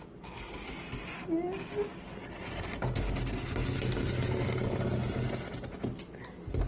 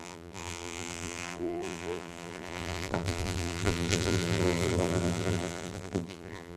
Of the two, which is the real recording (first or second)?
first